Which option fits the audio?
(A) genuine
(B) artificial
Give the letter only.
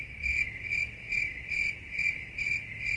A